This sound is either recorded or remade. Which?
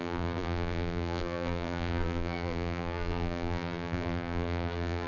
remade